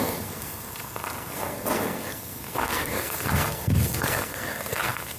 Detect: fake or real fake